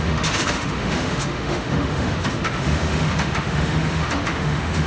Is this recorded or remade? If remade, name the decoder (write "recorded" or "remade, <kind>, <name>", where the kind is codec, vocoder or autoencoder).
remade, autoencoder, DAC-VAE